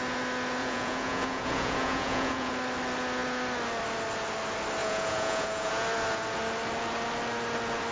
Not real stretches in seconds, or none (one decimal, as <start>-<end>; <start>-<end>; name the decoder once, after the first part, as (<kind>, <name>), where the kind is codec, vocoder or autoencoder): 0.6-2.5 (vocoder, Vocos); 4.8-5.7